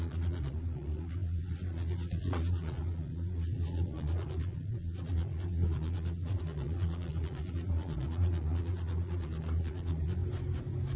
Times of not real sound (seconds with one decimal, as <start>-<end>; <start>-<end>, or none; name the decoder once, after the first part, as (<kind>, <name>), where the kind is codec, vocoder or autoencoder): 0.0-10.2 (vocoder, Vocos)